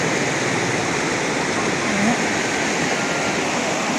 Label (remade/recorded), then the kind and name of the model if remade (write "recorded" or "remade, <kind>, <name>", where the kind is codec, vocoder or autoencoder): recorded